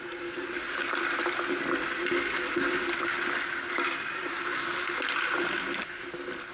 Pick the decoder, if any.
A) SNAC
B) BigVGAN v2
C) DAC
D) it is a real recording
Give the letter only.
D